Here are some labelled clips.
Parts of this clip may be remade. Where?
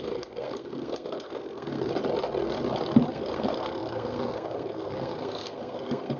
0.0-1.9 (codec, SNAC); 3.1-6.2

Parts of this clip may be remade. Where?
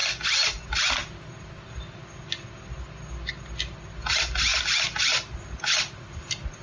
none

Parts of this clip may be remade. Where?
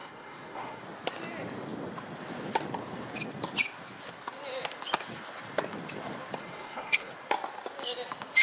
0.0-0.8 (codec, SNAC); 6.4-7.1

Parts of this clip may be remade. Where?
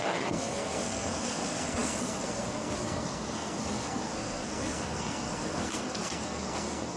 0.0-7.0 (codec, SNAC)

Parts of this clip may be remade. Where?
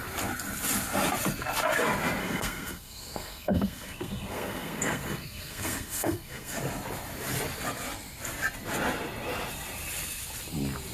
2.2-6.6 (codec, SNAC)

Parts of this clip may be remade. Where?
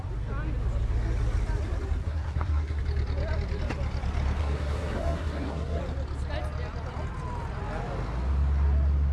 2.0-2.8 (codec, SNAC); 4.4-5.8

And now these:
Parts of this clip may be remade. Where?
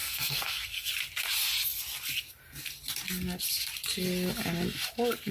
0.0-0.9 (codec, SNAC)